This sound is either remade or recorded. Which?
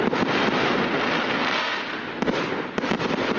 recorded